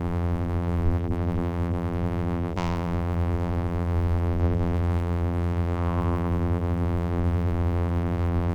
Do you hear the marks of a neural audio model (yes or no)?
yes